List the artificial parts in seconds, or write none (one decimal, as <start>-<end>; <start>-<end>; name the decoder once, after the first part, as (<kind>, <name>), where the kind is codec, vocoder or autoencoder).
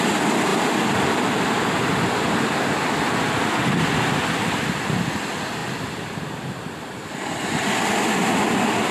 none